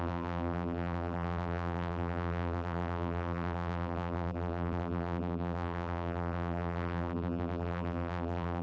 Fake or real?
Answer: fake